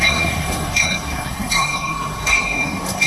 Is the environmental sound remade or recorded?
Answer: remade